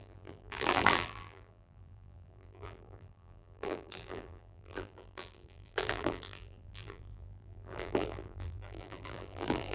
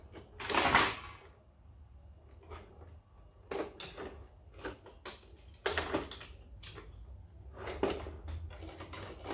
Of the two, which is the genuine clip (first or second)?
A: second